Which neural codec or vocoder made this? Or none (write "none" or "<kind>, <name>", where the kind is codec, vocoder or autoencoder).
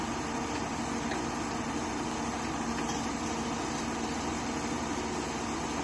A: none